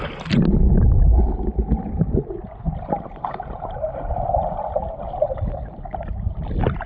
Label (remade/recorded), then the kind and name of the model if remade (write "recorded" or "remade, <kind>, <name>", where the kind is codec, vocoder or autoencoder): recorded